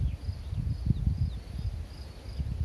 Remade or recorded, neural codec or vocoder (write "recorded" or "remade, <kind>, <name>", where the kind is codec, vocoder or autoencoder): recorded